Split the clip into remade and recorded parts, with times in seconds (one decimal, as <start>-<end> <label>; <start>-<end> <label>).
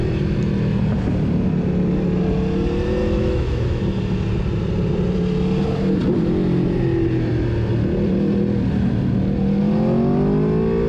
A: 0.0-3.0 recorded; 3.0-3.8 remade; 3.8-10.9 recorded